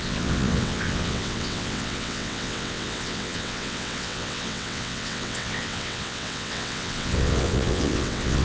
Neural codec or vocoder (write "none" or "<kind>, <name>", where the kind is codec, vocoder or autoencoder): vocoder, WaveNeXt